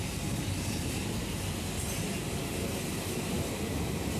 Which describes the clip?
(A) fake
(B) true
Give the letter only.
B